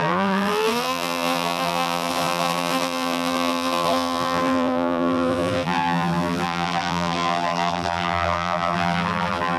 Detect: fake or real fake